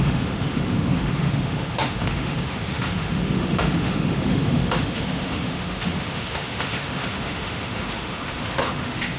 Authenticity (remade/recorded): remade